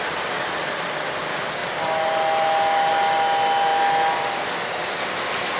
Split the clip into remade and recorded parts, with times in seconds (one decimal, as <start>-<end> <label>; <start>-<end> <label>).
0.0-5.6 recorded